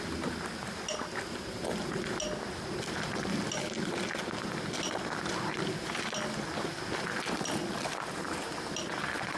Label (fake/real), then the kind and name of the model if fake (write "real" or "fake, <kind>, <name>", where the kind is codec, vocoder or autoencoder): real